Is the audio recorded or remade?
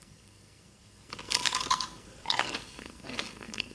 remade